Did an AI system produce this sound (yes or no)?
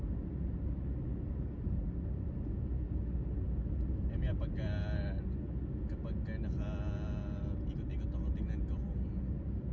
no